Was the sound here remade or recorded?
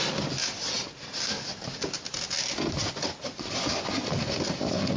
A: recorded